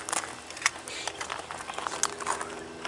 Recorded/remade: recorded